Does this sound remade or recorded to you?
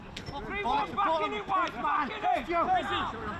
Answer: recorded